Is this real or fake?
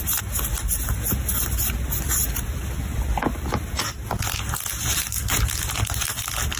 real